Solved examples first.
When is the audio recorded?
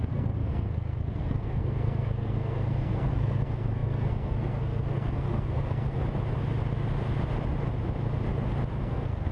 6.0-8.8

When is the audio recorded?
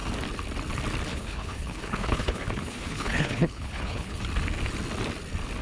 0.0-1.1; 4.2-5.6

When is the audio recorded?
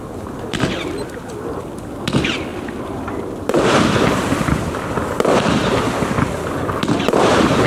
0.0-2.5; 4.7-7.7